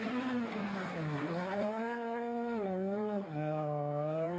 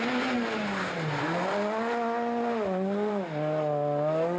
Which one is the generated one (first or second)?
first